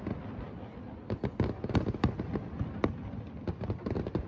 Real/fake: real